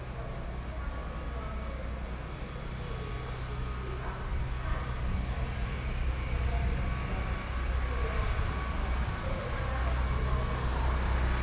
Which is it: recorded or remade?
recorded